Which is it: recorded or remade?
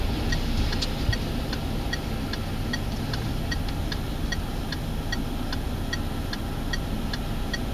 recorded